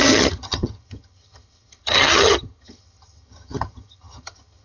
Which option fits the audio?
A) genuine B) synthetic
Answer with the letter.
B